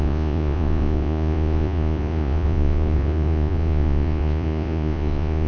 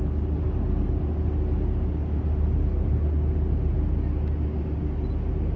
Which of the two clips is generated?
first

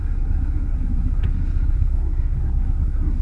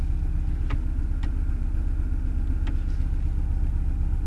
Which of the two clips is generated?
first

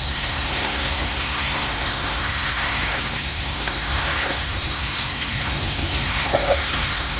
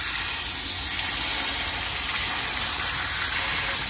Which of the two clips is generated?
first